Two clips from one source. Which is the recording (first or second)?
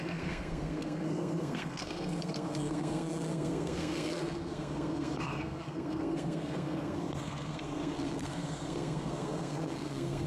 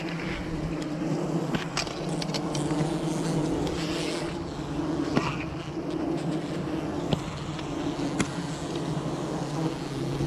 second